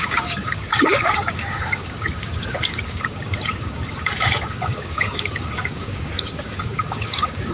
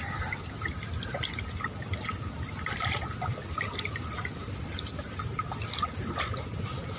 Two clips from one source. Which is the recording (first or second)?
second